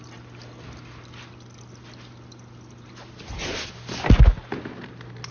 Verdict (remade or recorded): recorded